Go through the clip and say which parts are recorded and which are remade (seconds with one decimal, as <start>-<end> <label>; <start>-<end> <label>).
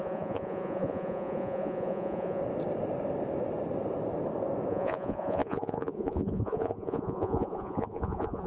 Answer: 0.0-2.4 remade; 2.4-4.7 recorded; 4.7-8.5 remade